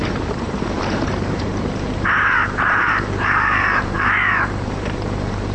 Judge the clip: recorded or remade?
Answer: remade